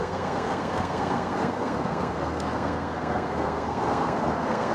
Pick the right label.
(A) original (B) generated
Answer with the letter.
B